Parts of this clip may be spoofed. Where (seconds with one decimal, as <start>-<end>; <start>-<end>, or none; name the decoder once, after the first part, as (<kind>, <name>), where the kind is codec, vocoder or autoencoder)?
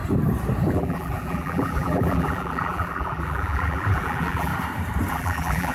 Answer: 0.7-4.5 (vocoder, BigVGAN v2); 5.1-5.7